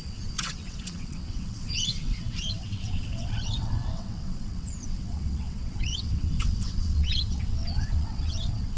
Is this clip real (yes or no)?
no